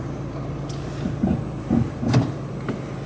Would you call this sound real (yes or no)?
yes